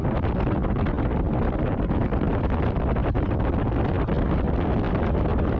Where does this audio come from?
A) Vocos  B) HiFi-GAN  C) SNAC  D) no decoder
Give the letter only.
D